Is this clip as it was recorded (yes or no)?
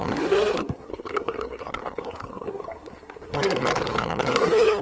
no